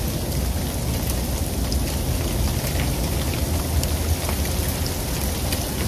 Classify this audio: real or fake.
real